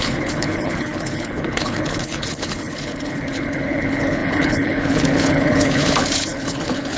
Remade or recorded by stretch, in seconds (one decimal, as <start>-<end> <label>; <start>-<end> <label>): 0.0-7.0 remade